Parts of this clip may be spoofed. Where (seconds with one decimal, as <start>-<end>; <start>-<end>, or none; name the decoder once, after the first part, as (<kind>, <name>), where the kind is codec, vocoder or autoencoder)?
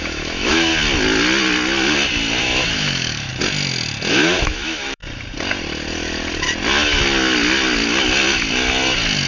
0.0-0.7 (autoencoder, DAC-VAE); 2.4-3.3; 4.1-5.0